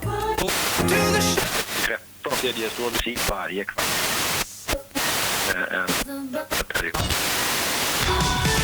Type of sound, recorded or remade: recorded